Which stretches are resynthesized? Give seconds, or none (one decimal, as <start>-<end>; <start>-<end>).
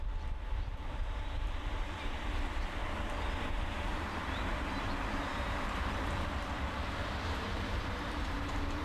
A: 0.0-2.8; 3.5-8.8